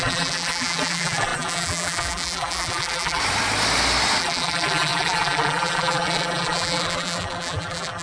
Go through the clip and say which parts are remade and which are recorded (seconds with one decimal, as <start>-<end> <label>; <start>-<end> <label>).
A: 0.0-3.2 remade; 3.2-4.2 recorded; 4.2-8.0 remade